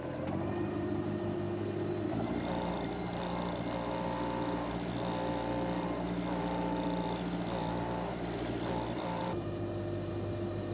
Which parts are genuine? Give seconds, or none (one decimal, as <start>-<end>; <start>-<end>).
9.2-10.1